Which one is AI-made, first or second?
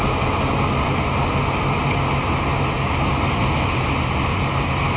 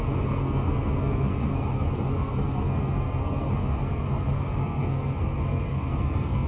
second